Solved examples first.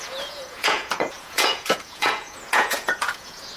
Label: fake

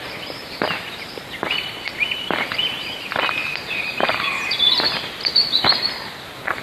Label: fake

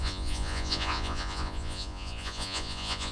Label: fake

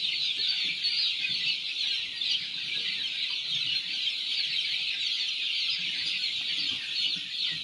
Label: fake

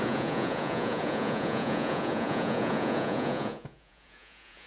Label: fake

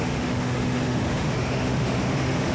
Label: fake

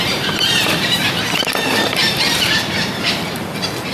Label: fake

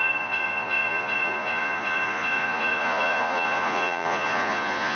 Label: fake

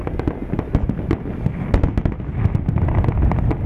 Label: real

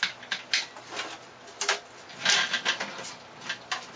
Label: real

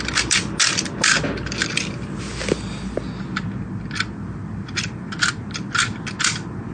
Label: real